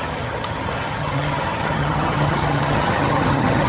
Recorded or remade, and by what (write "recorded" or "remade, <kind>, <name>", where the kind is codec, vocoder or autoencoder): remade, vocoder, HiFi-GAN